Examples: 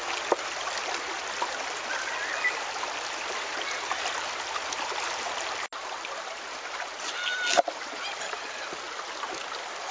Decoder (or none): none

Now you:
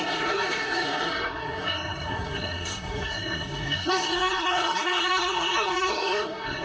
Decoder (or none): codec, SNAC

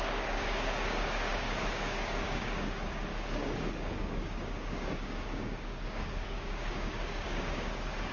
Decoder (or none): codec, DAC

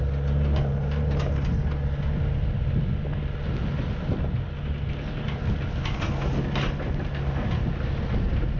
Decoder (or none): none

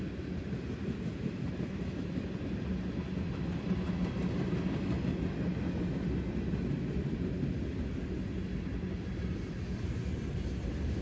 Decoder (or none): none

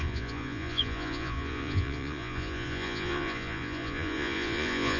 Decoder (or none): vocoder, Vocos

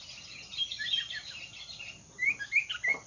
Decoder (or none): none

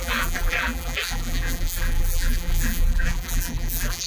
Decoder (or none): vocoder, BigVGAN v2